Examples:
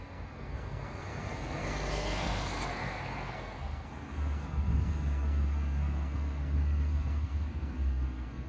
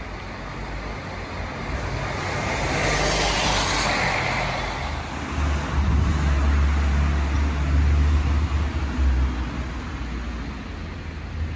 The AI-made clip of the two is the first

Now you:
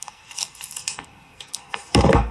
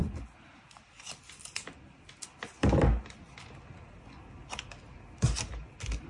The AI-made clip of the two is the first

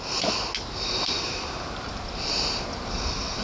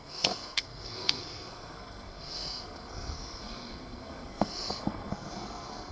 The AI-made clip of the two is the second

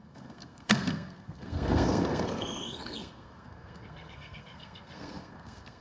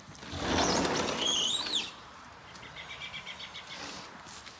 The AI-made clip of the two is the first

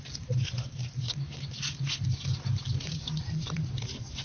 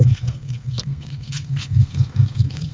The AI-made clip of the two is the second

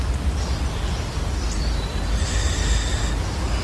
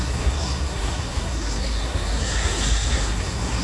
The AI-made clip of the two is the second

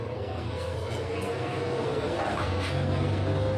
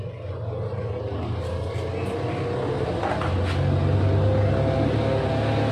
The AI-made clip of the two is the first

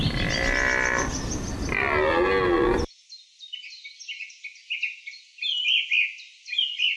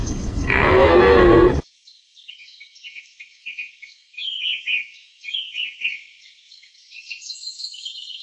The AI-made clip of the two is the second